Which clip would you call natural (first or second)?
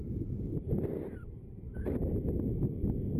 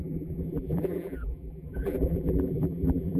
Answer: first